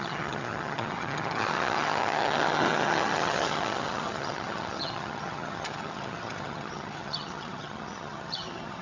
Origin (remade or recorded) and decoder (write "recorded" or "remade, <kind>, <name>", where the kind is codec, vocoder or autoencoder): remade, vocoder, HiFi-GAN